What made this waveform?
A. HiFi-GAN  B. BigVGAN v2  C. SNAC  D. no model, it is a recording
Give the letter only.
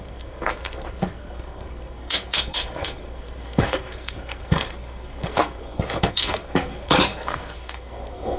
C